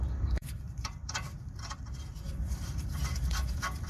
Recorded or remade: remade